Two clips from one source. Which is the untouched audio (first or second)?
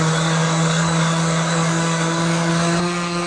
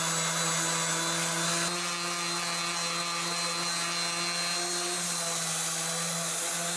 second